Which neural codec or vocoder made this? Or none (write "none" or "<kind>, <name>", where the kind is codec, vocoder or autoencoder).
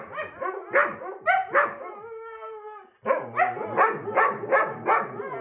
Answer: none